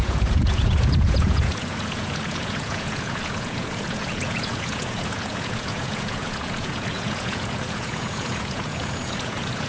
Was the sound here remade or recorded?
remade